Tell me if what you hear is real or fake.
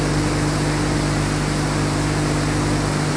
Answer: real